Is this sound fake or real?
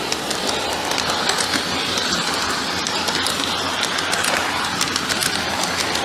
real